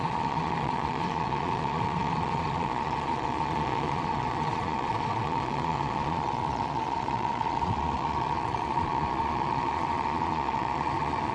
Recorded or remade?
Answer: remade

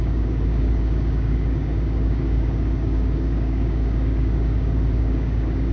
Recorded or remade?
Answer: remade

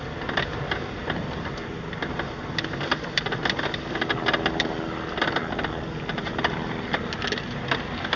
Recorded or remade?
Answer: recorded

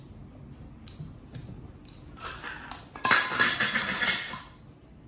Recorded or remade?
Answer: recorded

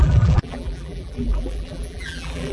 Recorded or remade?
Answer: remade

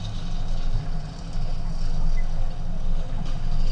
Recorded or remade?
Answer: recorded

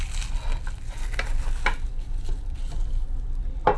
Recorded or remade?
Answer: recorded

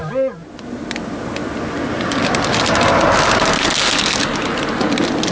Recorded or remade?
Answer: recorded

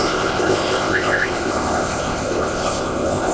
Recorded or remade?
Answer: remade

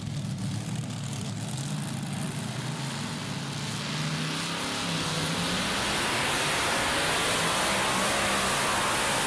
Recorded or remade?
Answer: recorded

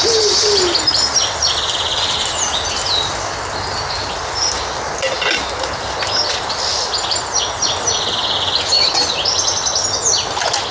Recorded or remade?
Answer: recorded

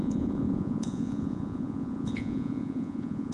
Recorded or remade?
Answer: remade